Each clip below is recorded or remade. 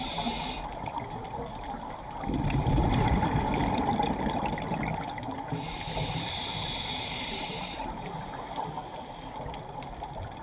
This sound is remade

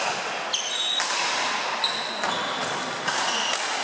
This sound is recorded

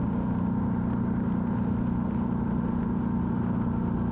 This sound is recorded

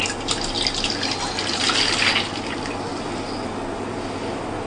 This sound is recorded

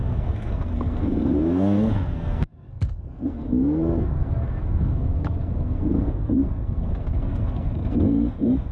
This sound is remade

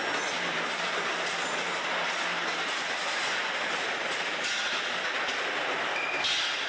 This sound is recorded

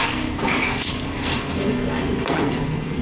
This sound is remade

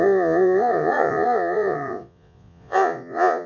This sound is remade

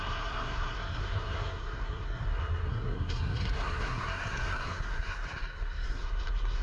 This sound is remade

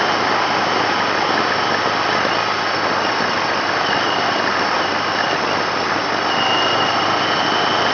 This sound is recorded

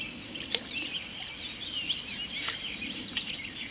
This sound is recorded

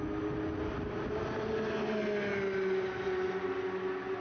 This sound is recorded